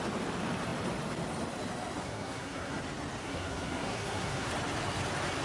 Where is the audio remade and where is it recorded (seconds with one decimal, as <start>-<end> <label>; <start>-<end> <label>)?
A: 0.0-2.0 recorded; 2.0-2.8 remade; 2.8-3.2 recorded; 3.2-4.5 remade; 4.5-5.4 recorded